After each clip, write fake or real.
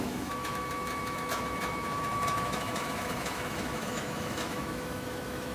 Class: fake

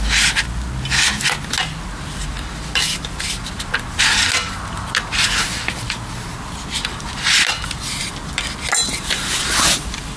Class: real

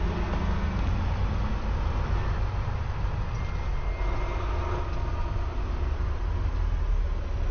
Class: real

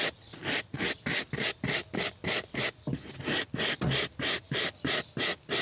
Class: real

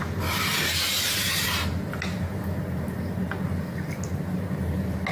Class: real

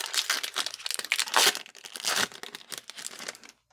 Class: real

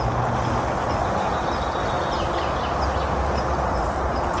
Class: real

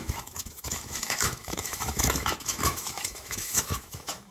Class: fake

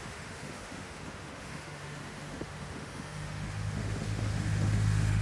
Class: fake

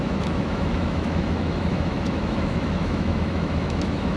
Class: fake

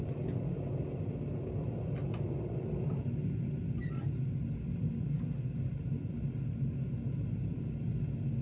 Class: real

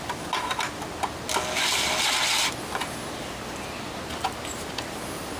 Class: real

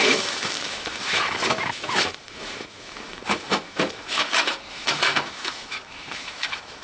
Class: fake